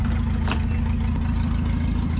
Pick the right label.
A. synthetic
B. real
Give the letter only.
B